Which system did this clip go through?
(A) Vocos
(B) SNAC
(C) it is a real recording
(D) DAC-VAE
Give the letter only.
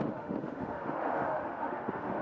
D